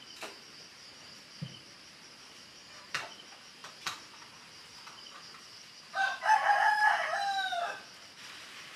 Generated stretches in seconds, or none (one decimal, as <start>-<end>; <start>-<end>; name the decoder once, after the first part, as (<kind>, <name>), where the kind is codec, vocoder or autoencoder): none